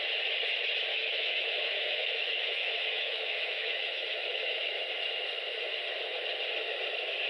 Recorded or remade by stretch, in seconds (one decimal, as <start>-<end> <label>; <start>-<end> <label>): 0.0-0.9 recorded; 0.9-4.8 remade; 4.8-7.3 recorded